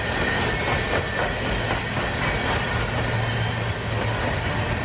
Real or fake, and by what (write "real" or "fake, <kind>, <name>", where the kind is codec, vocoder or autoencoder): real